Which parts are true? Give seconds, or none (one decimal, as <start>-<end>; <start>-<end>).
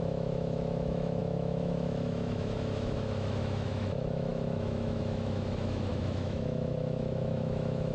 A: none